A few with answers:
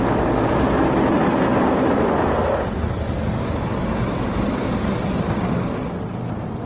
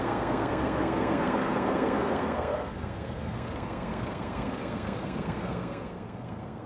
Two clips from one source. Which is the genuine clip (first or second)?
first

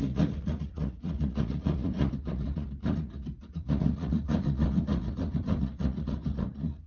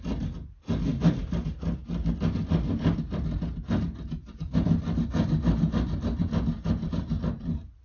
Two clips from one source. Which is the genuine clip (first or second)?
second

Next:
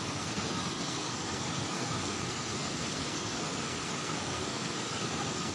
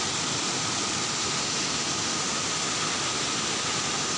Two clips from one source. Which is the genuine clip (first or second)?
second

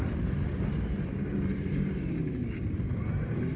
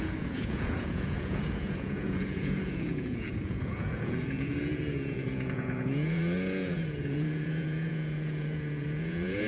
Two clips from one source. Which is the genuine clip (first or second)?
first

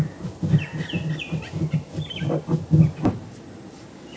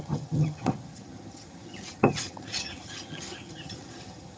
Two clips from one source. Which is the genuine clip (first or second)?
first